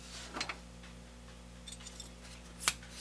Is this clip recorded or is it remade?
recorded